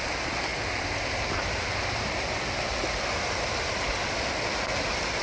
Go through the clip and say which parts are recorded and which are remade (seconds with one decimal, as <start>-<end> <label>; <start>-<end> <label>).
0.0-5.2 recorded